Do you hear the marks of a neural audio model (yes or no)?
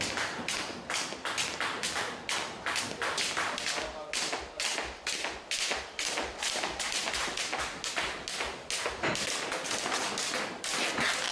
no